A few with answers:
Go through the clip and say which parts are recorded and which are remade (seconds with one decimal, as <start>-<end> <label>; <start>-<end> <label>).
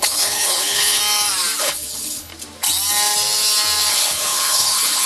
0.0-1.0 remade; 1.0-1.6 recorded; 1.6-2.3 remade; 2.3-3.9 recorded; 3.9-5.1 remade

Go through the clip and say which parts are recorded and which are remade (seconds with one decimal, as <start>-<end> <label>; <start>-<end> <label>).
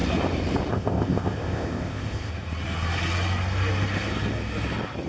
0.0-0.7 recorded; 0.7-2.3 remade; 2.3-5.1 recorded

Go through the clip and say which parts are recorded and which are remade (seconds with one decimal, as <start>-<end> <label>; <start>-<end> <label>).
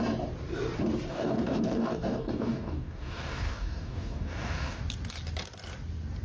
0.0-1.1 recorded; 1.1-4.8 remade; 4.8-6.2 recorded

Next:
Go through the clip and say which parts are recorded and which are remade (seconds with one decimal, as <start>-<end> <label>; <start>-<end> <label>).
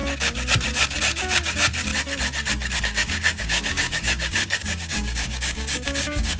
0.0-1.0 recorded; 1.0-1.9 remade; 1.9-2.8 recorded; 2.8-6.4 remade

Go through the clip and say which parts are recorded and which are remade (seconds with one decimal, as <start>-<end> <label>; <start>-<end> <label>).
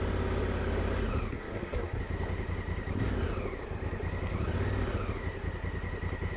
0.0-1.3 recorded; 1.3-2.0 remade; 2.0-6.4 recorded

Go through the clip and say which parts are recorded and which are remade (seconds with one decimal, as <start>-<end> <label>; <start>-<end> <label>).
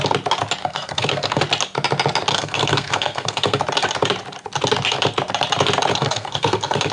0.0-0.6 recorded; 0.6-1.4 remade; 1.4-2.3 recorded; 2.3-3.6 remade; 3.6-5.9 recorded; 5.9-6.9 remade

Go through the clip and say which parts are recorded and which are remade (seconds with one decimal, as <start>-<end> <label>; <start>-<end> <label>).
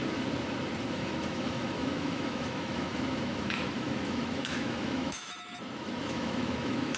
0.0-0.9 recorded; 0.9-7.0 remade